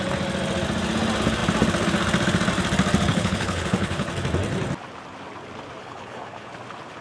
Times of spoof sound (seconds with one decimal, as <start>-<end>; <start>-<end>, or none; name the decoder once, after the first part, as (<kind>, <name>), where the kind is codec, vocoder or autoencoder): 3.1-4.1 (codec, HILCodec); 5.8-6.5